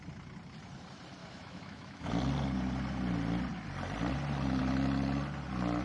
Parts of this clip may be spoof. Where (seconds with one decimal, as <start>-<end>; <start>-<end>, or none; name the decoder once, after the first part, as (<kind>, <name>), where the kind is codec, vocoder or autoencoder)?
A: 1.2-2.1 (autoencoder, DAC-VAE)